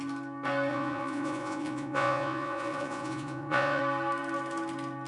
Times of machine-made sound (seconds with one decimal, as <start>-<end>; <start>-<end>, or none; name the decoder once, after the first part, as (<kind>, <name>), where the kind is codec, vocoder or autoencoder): 0.7-3.8 (vocoder, Vocos)